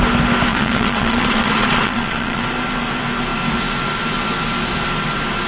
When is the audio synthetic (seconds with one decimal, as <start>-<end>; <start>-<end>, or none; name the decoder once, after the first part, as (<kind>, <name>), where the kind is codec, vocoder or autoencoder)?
0.5-2.4 (vocoder, Vocos)